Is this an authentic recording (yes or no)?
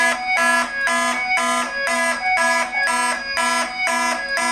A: yes